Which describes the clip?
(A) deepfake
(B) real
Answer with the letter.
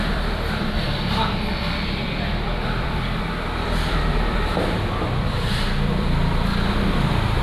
A